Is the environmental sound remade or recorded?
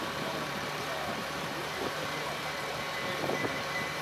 remade